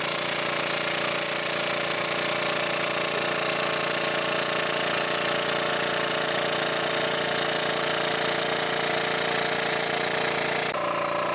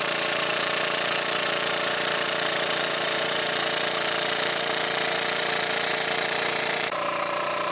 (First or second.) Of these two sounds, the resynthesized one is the second